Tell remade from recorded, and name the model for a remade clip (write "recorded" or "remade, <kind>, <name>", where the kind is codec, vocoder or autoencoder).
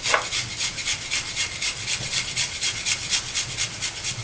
recorded